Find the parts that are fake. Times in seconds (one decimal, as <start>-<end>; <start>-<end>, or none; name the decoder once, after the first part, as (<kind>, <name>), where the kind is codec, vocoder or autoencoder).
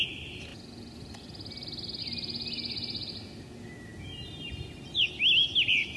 none